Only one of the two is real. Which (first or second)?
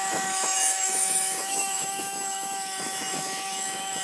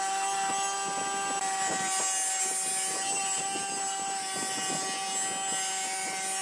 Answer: second